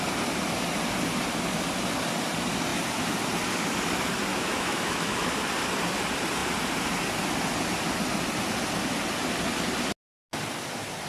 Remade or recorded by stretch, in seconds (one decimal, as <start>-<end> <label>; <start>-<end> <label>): 0.0-4.3 recorded; 4.3-5.3 remade; 5.3-11.1 recorded